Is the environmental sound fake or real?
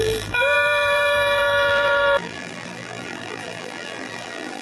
fake